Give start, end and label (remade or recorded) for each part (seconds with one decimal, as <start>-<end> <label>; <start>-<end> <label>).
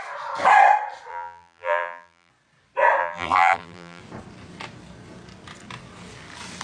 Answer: 0.0-1.1 recorded; 1.1-2.3 remade; 2.3-3.0 recorded; 3.0-4.0 remade; 4.0-6.6 recorded